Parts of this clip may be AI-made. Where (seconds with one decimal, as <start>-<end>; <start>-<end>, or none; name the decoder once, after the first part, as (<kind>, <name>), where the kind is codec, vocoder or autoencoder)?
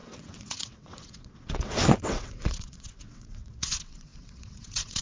0.0-5.0 (vocoder, WaveNeXt)